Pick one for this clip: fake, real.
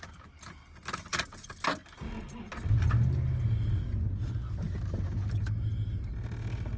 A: real